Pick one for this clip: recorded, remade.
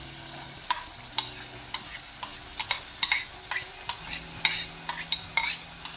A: recorded